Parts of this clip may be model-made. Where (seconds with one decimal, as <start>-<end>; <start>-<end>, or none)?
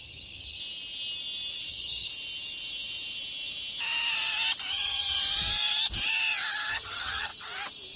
0.0-0.6; 1.7-2.1; 4.7-5.2; 6.7-7.3